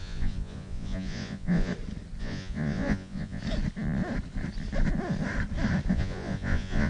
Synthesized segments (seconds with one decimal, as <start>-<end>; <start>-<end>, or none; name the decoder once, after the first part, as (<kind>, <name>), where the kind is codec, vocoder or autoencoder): 0.0-1.7 (vocoder, Vocos); 2.2-3.4; 5.9-6.9